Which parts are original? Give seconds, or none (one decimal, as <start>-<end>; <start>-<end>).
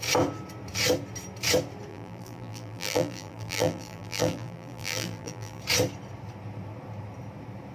0.0-1.9; 5.6-7.7